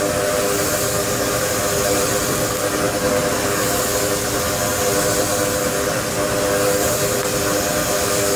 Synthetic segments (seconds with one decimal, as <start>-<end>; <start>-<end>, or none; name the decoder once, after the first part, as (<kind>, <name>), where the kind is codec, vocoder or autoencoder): none